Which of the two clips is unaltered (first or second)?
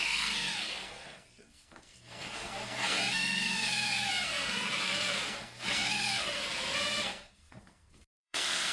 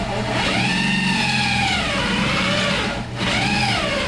second